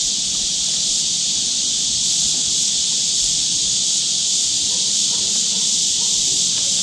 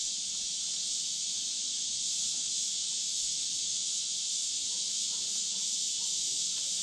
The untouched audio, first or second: first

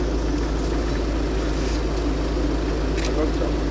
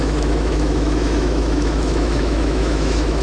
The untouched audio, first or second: first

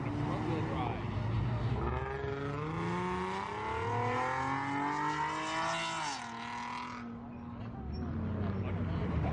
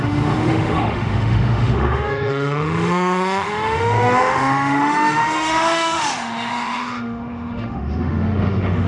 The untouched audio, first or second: first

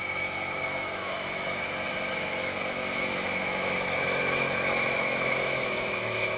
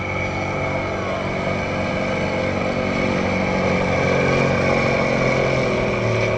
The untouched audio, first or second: second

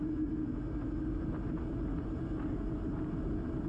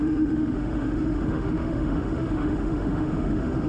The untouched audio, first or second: first